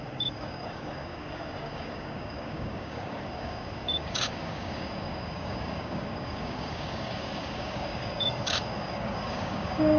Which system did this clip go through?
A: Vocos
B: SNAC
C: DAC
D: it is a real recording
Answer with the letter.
C